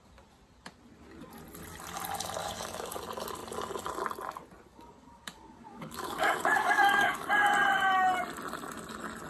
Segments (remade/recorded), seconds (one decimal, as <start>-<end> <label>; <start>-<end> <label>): 0.0-2.4 recorded; 2.4-3.0 remade; 3.0-4.7 recorded; 4.7-7.3 remade; 7.3-9.3 recorded